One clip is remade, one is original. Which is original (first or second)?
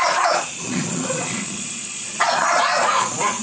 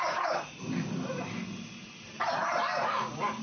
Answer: second